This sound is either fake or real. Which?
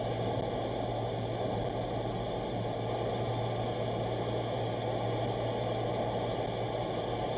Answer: real